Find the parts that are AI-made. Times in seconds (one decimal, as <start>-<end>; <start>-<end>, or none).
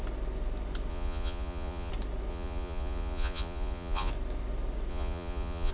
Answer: 0.9-1.9; 2.3-4.1; 4.9-5.7